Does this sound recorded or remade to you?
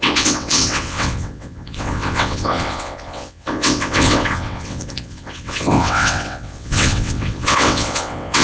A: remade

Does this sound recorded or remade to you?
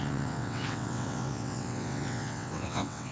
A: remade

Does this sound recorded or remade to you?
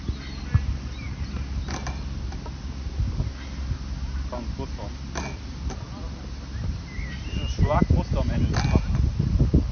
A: recorded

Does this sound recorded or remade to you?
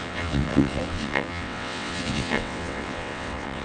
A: remade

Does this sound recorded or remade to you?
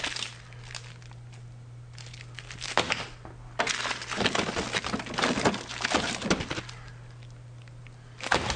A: recorded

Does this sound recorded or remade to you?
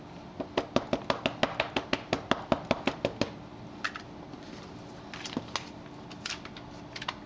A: recorded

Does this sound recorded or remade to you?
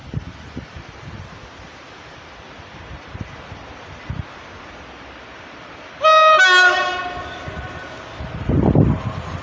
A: recorded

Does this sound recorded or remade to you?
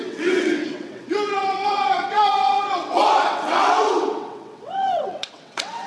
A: remade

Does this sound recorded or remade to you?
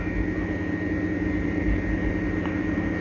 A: recorded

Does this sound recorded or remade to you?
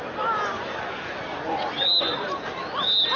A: recorded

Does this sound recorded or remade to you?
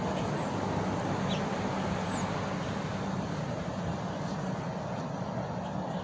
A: recorded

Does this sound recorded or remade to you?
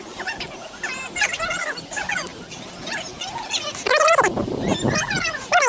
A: recorded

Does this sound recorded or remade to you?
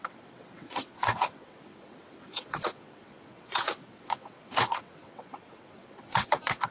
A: remade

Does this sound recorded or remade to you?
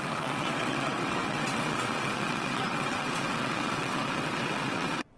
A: remade